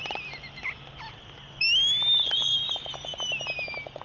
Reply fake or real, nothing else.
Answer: real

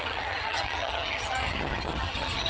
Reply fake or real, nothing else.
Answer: fake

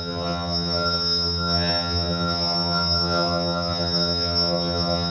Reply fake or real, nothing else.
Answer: fake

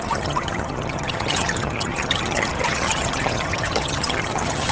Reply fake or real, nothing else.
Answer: fake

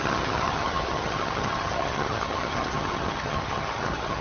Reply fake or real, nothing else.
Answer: fake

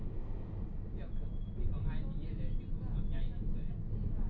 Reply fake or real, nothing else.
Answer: real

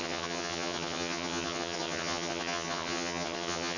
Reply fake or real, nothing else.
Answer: fake